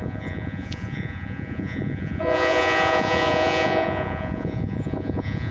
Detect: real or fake fake